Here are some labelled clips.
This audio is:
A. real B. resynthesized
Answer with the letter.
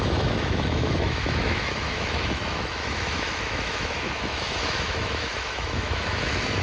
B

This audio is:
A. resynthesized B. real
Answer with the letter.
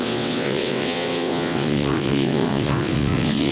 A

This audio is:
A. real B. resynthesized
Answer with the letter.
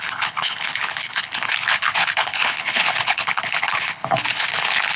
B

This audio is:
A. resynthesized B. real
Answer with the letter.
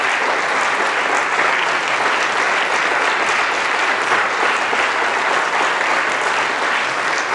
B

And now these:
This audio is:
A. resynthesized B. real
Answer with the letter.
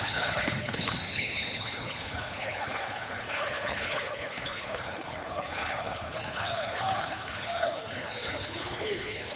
A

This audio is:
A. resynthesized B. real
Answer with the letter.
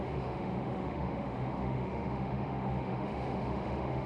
A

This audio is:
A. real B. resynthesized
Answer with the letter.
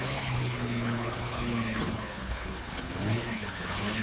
B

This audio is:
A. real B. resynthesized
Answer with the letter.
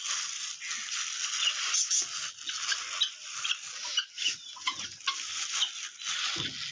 A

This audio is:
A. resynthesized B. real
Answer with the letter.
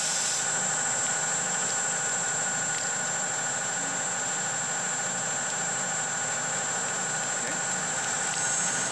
B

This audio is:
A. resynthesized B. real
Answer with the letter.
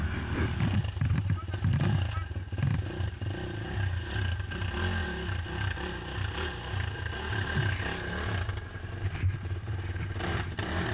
B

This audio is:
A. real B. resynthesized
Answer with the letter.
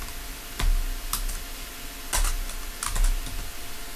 A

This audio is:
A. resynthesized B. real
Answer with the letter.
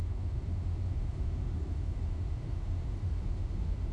A